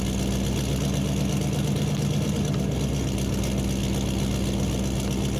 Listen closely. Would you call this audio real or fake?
real